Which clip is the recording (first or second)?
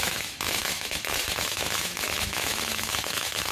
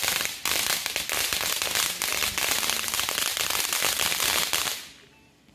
second